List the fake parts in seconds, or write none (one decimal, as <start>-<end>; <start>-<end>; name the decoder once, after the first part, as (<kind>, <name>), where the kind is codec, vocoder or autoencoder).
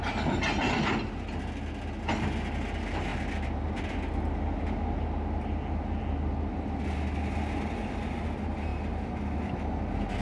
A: none